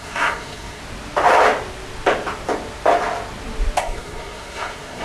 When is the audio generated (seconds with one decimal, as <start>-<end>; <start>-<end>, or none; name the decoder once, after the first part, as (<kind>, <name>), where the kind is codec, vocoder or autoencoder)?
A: 0.0-0.8 (codec, SNAC); 3.8-5.0